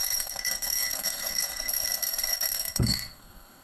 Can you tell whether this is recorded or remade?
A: remade